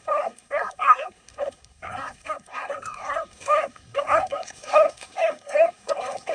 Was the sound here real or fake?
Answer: fake